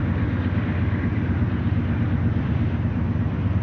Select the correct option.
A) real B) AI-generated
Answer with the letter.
A